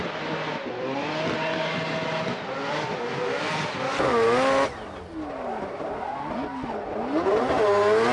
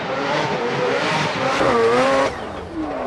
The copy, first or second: second